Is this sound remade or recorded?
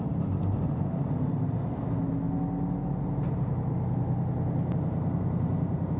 recorded